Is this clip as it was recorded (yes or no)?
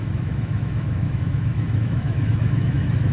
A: no